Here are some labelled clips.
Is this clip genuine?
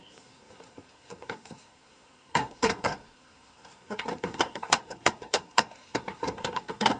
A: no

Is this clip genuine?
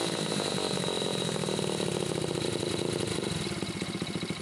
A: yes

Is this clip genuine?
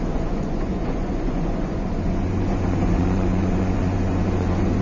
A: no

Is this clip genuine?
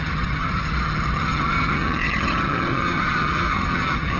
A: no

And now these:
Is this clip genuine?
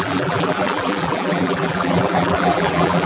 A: no